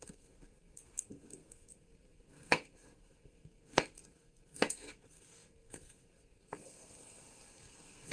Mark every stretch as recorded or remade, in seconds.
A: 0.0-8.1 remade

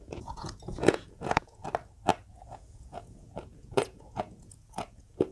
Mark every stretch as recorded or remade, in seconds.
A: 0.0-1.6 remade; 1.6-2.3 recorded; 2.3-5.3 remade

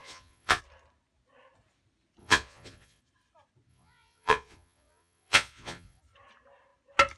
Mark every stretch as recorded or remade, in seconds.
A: 0.0-0.6 remade; 0.6-2.2 recorded; 2.2-3.0 remade; 3.0-3.7 recorded; 3.7-6.0 remade; 6.0-7.2 recorded

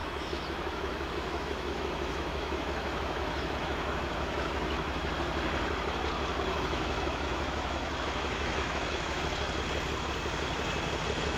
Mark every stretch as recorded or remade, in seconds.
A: 0.0-5.1 remade; 5.1-6.3 recorded; 6.3-9.2 remade; 9.2-11.4 recorded